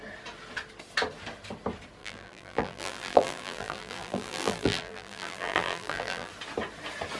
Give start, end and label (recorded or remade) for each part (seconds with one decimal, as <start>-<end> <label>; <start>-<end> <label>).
0.0-2.0 recorded; 2.0-6.3 remade; 6.3-7.2 recorded